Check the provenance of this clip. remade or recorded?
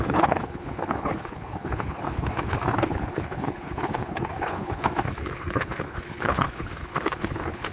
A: remade